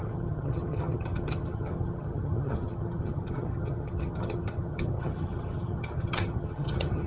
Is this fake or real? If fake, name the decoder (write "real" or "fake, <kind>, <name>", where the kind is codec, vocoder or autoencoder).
fake, vocoder, HiFi-GAN